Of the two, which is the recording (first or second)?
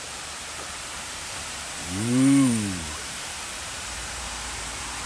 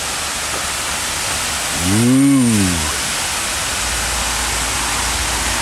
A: second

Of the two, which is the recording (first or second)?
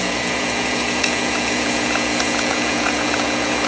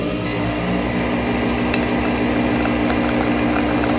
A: second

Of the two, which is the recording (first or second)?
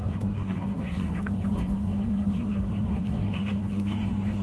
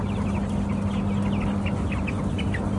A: second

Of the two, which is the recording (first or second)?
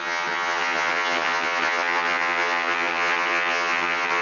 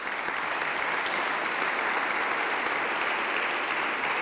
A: second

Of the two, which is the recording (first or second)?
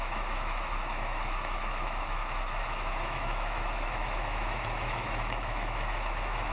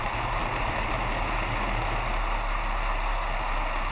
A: second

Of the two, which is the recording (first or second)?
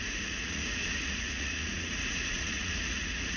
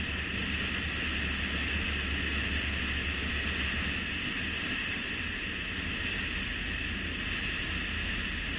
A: second